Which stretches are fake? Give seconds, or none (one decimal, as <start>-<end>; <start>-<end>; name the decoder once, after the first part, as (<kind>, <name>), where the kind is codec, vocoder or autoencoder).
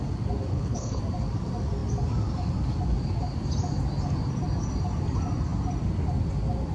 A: 0.5-1.0 (codec, HILCodec)